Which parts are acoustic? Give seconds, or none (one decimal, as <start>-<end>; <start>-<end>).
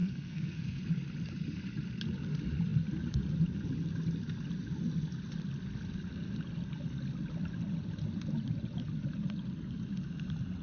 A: 0.8-10.6